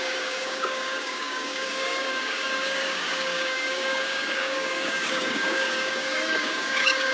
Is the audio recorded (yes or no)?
no